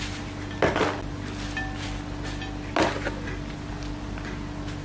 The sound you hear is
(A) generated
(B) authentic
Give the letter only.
B